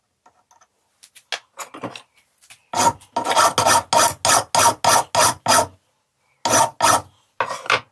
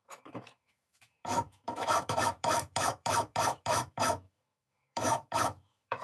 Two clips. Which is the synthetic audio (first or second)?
second